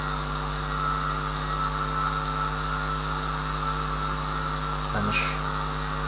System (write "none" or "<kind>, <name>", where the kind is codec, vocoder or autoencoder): none